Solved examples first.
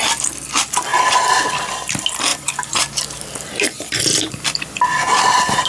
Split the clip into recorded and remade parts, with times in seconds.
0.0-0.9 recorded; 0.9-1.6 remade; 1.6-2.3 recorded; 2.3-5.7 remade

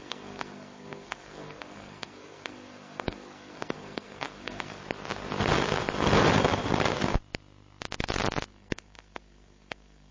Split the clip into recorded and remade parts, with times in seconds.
0.0-4.8 remade; 4.8-8.5 recorded; 8.5-10.1 remade

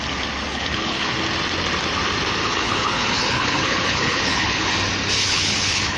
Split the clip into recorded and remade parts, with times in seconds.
0.0-0.5 recorded; 0.5-1.1 remade; 1.1-2.4 recorded; 2.4-4.7 remade; 4.7-5.2 recorded; 5.2-6.0 remade

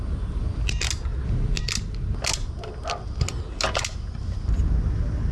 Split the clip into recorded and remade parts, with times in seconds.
0.0-5.3 recorded

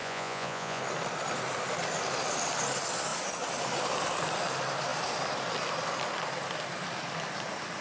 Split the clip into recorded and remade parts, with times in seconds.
0.0-0.8 remade; 0.8-7.8 recorded